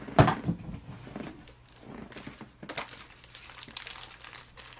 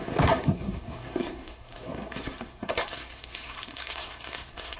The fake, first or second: second